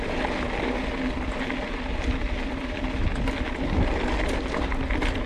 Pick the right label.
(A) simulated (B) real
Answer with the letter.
B